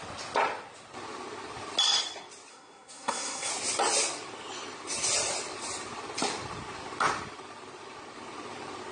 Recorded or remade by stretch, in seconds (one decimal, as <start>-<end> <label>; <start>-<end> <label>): 0.0-2.5 recorded; 2.5-3.5 remade; 3.5-8.9 recorded